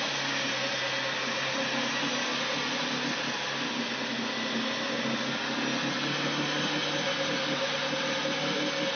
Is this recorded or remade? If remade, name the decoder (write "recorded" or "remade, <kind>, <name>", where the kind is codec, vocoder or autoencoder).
recorded